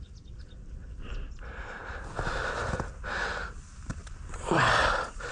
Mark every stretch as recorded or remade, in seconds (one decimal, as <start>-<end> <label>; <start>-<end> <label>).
0.0-5.3 recorded